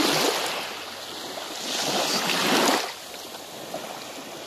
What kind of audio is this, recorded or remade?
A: recorded